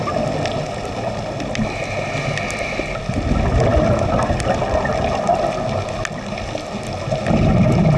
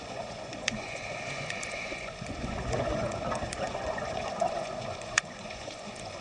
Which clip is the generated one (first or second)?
second